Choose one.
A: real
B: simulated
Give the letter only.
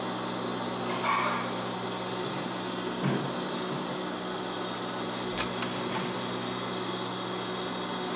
A